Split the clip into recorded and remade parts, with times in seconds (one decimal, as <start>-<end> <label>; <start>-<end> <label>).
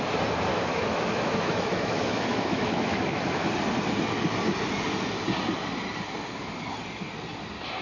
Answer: 0.0-0.5 recorded; 0.5-3.5 remade; 3.5-7.8 recorded